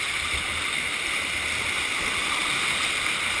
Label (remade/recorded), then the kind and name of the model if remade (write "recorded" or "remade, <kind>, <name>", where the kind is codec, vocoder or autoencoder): recorded